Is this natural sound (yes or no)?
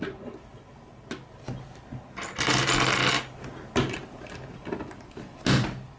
yes